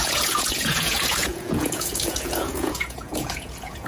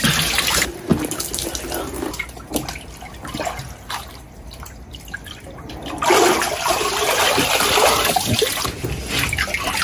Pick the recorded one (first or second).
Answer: second